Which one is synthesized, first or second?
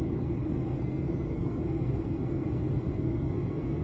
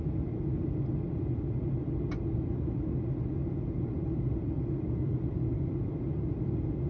first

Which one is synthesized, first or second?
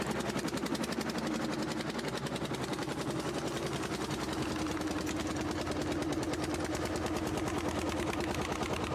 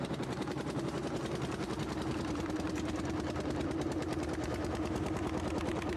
second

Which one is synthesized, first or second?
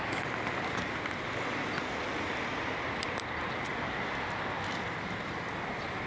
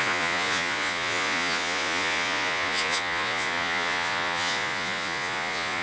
second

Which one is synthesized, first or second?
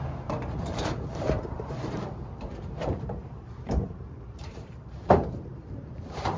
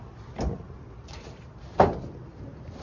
first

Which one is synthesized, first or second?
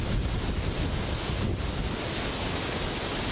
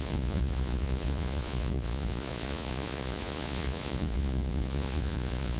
second